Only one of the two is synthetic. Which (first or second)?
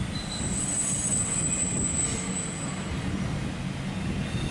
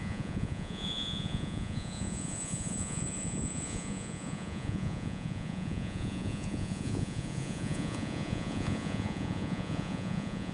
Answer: second